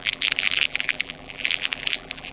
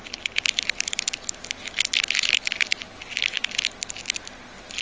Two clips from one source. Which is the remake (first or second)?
first